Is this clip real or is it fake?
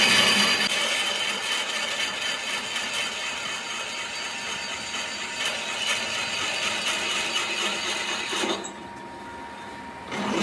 real